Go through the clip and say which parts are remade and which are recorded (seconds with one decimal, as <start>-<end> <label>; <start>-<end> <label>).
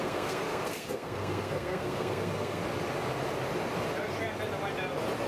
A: 0.0-2.6 remade; 2.6-5.3 recorded